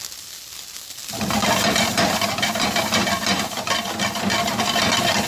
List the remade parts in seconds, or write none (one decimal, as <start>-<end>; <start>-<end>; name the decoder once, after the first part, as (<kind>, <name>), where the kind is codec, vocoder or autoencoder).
1.0-4.2 (vocoder, BigVGAN v2)